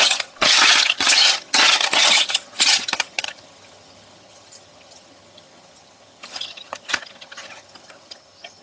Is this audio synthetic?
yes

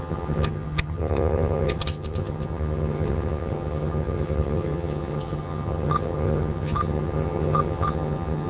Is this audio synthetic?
yes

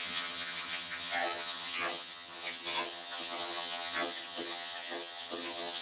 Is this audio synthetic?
yes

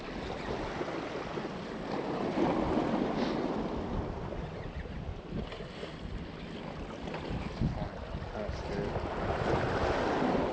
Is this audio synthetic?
no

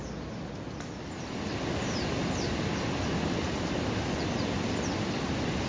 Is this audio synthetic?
no